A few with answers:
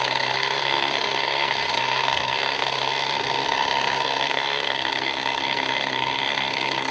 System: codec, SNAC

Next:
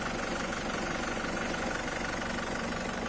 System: vocoder, Vocos